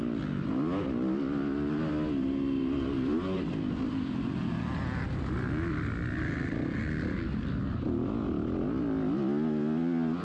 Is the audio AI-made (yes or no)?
no